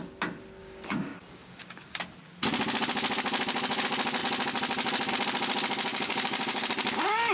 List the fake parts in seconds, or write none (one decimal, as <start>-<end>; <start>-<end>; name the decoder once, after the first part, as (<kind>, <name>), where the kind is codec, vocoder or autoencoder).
0.6-2.0 (codec, DAC); 5.9-6.7